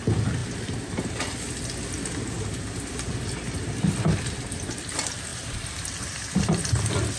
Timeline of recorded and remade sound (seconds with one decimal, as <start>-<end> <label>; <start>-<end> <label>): 0.0-7.2 recorded

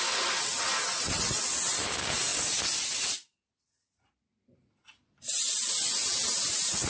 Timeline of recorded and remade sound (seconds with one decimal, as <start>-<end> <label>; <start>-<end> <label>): 0.0-6.9 recorded

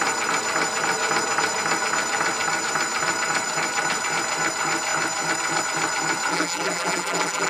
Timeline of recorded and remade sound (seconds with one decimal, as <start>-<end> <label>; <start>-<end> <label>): 0.0-6.3 recorded; 6.3-7.5 remade

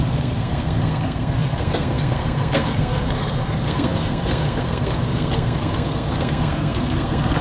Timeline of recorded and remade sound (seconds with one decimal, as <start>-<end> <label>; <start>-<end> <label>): 0.0-7.4 remade

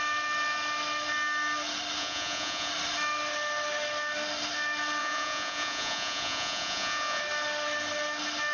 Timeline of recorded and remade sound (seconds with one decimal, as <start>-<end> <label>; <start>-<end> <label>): 0.0-2.0 recorded; 2.0-2.7 remade; 2.7-5.0 recorded; 5.0-7.2 remade; 7.2-8.5 recorded

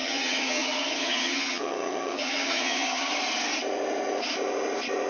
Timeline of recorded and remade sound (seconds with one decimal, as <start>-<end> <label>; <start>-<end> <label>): 0.0-3.1 remade; 3.1-5.1 recorded